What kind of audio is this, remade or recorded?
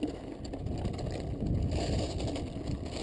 recorded